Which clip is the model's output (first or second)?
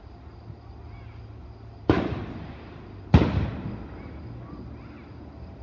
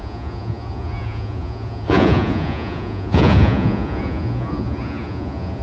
second